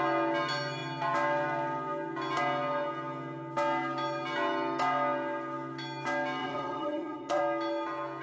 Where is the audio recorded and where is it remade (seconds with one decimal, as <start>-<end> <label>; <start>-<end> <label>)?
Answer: 0.0-6.4 recorded; 6.4-7.4 remade; 7.4-8.2 recorded